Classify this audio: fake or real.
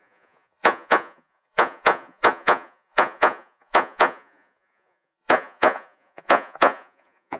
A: fake